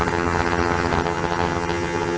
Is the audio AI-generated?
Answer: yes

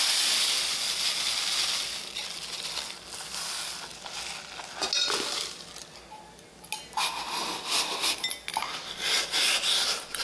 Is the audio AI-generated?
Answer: no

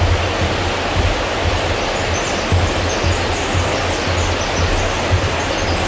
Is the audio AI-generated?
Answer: no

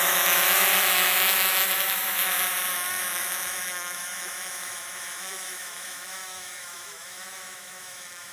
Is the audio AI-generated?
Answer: yes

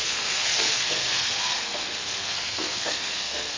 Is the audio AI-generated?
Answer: yes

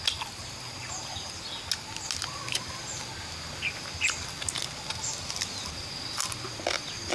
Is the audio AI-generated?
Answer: no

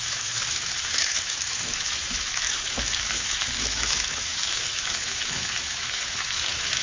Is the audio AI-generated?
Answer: yes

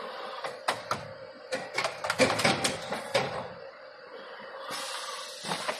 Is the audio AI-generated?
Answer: no